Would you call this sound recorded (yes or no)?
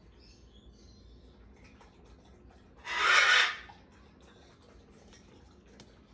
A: yes